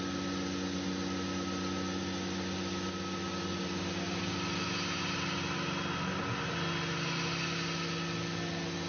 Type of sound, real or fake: real